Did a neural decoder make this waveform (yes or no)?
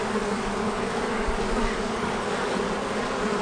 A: yes